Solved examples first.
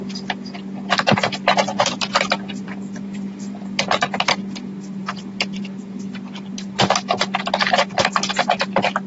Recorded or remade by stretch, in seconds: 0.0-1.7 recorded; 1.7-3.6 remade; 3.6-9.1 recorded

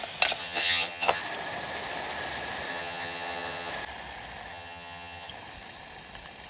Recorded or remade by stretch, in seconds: 0.0-0.4 recorded; 0.4-1.2 remade; 1.2-2.7 recorded; 2.7-3.7 remade; 3.7-4.5 recorded; 4.5-5.3 remade; 5.3-6.5 recorded

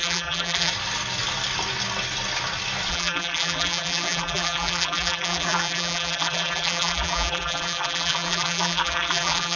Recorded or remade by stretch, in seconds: 0.0-0.7 remade; 0.7-2.9 recorded; 2.9-9.6 remade

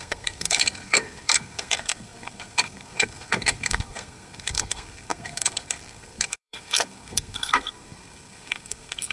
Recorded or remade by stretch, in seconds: 0.0-9.1 remade

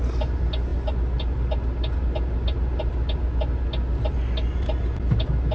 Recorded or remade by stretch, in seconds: 0.0-5.5 recorded